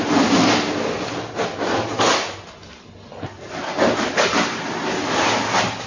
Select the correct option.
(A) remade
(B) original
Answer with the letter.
B